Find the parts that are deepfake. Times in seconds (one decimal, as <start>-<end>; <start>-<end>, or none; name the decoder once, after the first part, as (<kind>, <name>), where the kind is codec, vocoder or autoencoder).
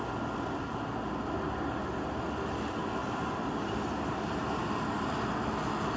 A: none